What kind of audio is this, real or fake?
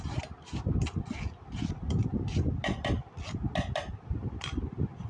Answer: real